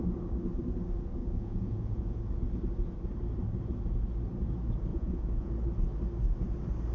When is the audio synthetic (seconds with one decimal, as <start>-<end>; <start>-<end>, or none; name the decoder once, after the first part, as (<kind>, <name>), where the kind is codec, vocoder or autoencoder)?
1.2-2.2 (vocoder, Vocos); 4.9-5.5